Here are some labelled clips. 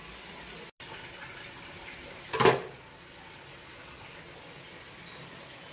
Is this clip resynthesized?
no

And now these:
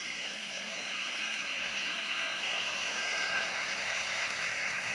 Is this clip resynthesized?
yes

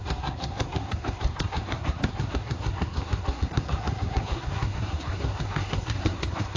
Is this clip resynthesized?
yes